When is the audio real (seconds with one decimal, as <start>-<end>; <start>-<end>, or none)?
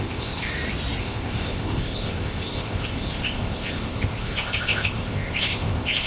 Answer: 0.5-1.0